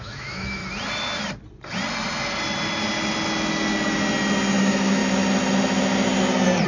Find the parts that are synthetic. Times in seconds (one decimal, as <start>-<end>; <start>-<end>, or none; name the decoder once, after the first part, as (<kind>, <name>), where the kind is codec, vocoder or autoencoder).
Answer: 0.0-0.6 (autoencoder, DAC-VAE); 4.6-5.0